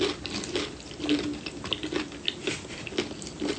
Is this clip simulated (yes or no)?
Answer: no